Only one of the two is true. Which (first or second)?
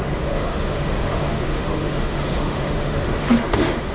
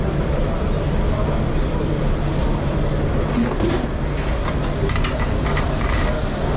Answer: second